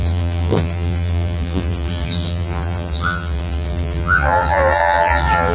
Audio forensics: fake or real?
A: fake